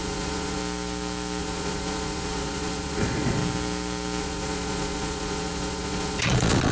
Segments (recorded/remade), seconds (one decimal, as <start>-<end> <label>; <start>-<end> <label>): 0.0-0.6 remade; 0.6-1.4 recorded; 1.4-3.4 remade; 3.4-4.2 recorded; 4.2-6.7 remade